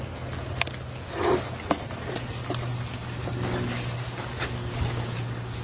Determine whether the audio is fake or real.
real